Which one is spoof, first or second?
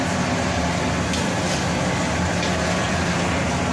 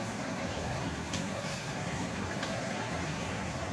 second